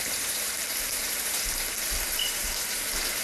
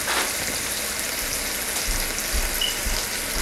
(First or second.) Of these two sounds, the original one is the second